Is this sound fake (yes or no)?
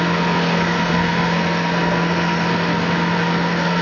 yes